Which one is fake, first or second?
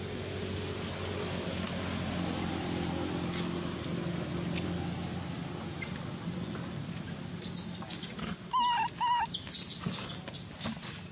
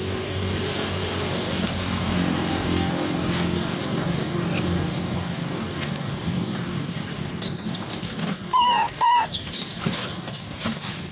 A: second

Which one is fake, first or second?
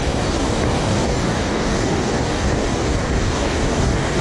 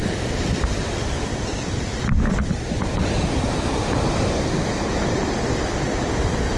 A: first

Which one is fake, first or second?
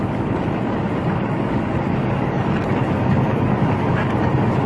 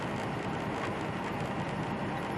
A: first